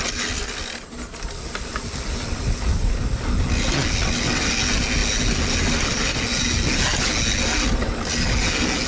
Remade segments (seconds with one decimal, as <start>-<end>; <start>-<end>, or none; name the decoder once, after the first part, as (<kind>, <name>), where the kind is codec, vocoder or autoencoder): none